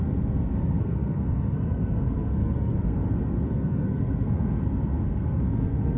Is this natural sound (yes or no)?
no